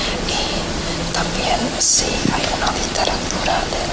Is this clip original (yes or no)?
yes